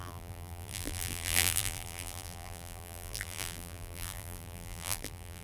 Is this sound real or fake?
fake